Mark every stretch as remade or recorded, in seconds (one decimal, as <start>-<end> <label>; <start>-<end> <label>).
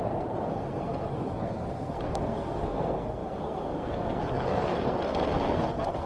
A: 0.0-6.1 remade